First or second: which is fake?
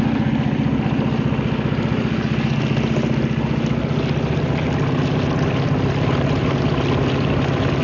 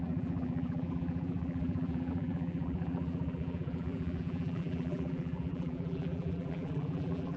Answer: second